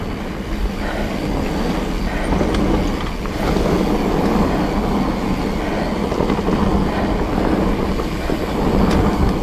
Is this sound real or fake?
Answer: real